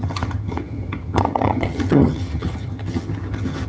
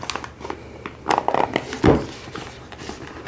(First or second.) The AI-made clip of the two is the first